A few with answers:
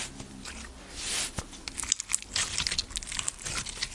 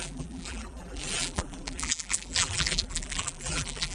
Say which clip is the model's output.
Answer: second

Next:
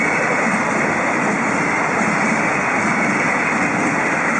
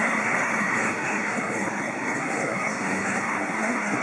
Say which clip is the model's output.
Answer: second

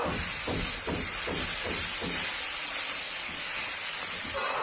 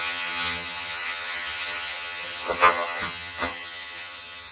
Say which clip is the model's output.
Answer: second